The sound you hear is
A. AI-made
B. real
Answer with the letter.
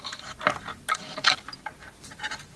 B